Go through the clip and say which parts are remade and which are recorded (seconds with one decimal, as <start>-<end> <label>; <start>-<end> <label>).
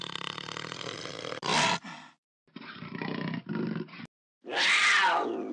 0.0-5.5 recorded